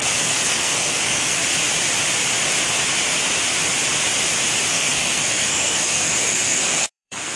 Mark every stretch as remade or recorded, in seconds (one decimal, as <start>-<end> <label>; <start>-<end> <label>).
0.0-1.4 remade; 1.4-4.7 recorded; 4.7-7.4 remade